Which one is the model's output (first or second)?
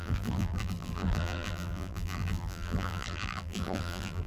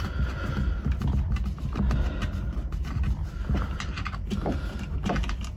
first